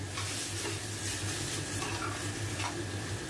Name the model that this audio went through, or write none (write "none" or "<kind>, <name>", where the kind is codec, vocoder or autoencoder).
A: none